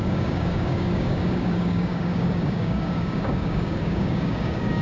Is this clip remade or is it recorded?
remade